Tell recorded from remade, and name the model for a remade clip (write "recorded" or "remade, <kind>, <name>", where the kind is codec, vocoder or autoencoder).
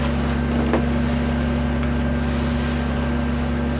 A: recorded